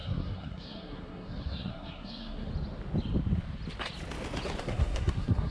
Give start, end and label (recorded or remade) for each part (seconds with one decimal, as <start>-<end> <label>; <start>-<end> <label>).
0.0-2.5 remade; 2.5-4.6 recorded; 4.6-5.5 remade